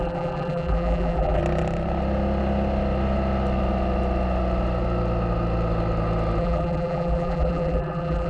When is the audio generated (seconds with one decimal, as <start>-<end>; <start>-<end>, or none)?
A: 0.0-1.4; 6.4-8.3